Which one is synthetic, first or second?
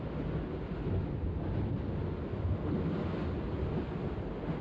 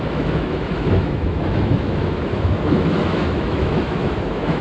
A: second